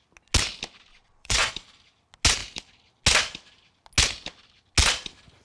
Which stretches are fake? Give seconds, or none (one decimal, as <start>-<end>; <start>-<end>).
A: 0.9-1.5